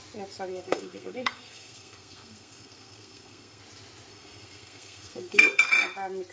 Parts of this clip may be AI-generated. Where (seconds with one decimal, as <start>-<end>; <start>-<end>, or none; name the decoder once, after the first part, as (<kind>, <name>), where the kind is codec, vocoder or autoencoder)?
0.5-3.6 (codec, SNAC); 4.1-5.7